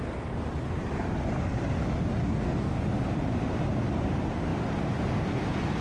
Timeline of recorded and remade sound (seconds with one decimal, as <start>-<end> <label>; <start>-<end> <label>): 0.0-2.2 recorded; 2.2-2.8 remade; 2.8-5.8 recorded